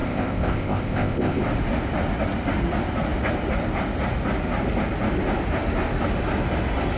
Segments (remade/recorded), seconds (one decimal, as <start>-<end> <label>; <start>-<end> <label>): 0.0-1.4 remade; 1.4-7.0 recorded